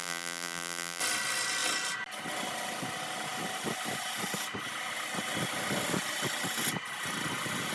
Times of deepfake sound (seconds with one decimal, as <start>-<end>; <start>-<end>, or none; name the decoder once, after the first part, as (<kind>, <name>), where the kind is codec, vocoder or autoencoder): 0.0-1.0 (vocoder, BigVGAN v2)

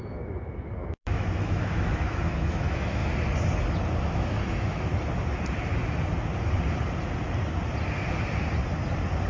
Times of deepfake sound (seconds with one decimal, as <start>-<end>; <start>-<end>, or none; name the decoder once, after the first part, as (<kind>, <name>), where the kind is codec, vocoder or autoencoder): 0.0-3.0 (autoencoder, DAC-VAE); 4.0-4.9

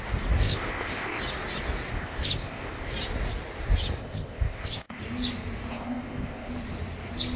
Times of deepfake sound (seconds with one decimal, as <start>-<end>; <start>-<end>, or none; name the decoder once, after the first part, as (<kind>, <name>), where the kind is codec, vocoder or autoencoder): 0.4-1.2 (codec, ZipCodec); 1.9-2.9; 4.0-5.0; 5.7-6.5

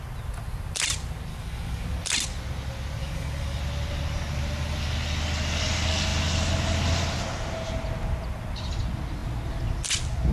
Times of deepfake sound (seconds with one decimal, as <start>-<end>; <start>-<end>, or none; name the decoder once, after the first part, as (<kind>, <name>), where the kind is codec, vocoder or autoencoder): 1.3-2.0 (codec, DAC); 3.0-3.6

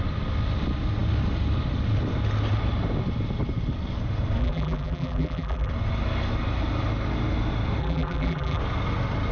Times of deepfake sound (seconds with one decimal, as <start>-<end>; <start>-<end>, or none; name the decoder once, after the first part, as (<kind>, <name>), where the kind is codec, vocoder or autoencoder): 4.4-5.7 (vocoder, BigVGAN v2); 7.8-8.6

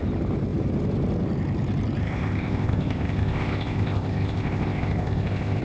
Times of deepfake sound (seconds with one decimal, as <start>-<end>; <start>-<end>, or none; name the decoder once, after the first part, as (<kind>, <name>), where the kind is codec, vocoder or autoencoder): 2.0-5.6 (codec, ZipCodec)